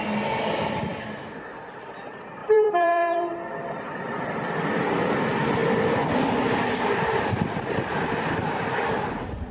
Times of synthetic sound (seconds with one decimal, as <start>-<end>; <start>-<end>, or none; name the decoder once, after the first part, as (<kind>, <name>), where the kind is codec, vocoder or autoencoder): 2.4-3.3 (vocoder, BigVGAN v2); 5.6-7.7